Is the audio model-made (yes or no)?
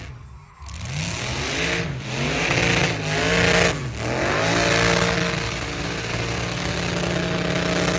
no